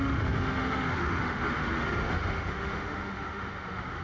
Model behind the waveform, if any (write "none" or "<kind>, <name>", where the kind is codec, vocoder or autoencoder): autoencoder, DAC-VAE